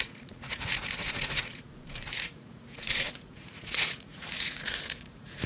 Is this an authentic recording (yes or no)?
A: no